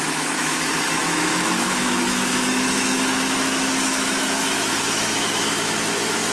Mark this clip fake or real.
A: fake